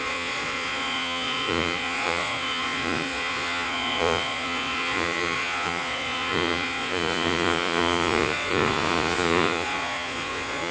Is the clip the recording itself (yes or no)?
no